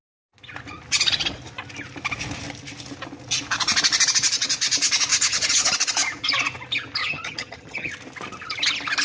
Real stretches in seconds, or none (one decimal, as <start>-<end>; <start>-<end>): 0.0-5.1; 5.7-7.0; 7.9-9.0